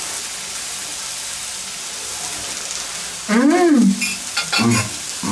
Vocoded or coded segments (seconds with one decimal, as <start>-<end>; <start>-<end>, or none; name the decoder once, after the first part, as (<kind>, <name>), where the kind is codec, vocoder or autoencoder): none